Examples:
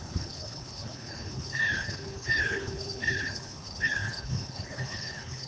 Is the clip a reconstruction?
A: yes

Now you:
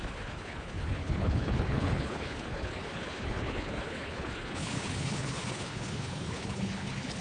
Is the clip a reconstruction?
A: yes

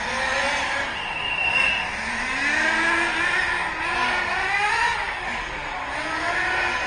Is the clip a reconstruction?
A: no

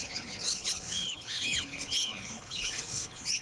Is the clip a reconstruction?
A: yes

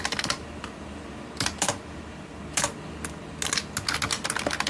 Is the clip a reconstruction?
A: no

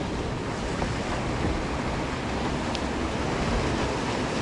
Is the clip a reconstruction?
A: no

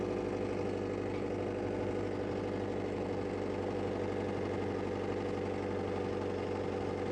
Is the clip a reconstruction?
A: no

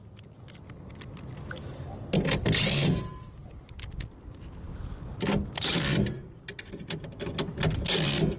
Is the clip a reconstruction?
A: no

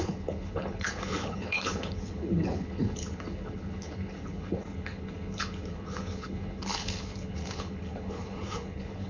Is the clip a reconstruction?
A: yes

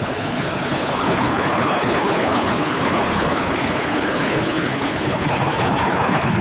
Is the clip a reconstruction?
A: yes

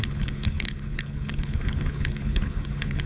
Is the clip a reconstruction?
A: yes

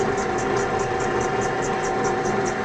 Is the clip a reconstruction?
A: no